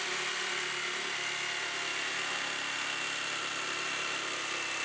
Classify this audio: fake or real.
real